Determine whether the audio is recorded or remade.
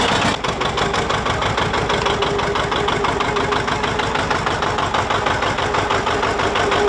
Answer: recorded